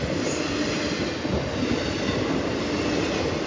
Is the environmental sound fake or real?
real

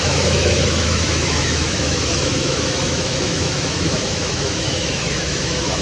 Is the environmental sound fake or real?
fake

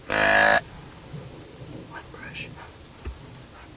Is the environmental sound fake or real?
real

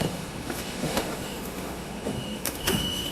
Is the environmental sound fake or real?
fake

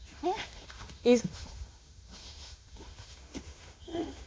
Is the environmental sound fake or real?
fake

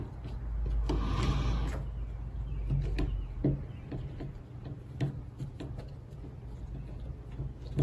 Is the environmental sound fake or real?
real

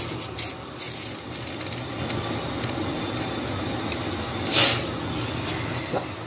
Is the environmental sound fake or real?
real